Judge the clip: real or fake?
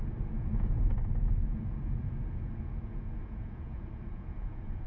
fake